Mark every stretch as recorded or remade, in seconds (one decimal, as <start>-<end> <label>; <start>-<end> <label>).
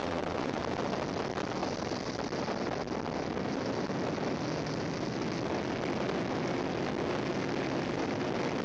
0.0-0.6 remade; 0.6-8.6 recorded